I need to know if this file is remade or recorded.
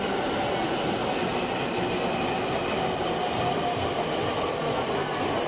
recorded